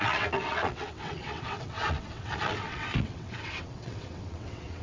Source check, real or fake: fake